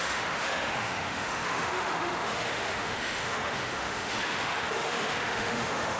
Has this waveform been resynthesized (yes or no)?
yes